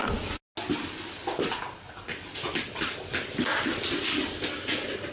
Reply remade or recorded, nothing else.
recorded